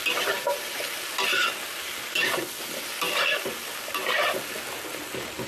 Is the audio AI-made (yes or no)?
yes